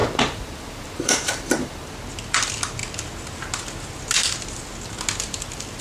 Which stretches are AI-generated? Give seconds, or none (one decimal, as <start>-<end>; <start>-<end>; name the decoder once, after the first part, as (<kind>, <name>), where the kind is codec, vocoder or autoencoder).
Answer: 0.0-1.9 (vocoder, BigVGAN v2)